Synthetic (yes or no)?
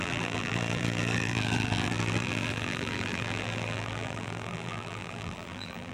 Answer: yes